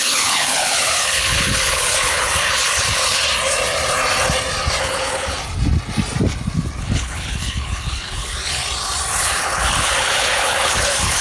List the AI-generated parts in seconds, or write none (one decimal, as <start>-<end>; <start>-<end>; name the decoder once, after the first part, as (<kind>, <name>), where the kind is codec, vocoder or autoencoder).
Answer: 0.0-3.2 (codec, HILCodec); 4.8-5.4; 6.8-8.6; 9.2-11.2

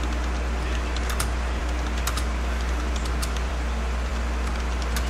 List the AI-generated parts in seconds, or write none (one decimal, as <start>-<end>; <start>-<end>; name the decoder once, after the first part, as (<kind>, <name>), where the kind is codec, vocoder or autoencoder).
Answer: none

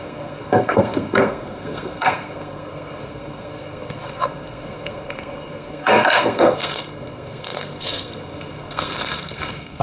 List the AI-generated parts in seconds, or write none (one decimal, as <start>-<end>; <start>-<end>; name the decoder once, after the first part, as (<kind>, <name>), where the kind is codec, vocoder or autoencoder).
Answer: 0.0-9.8 (codec, SNAC)

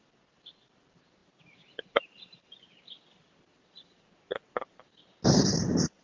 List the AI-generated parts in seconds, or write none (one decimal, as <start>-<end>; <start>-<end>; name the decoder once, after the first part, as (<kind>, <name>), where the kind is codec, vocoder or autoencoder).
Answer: 1.2-2.8 (vocoder, BigVGAN v2)

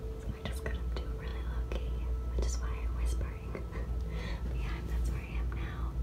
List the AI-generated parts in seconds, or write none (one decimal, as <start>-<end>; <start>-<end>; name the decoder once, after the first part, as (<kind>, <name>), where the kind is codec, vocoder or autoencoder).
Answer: none

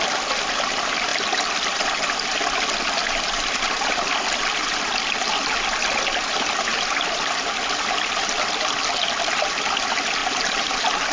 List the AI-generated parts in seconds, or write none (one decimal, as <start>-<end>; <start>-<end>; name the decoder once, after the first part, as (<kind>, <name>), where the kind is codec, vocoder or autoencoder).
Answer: none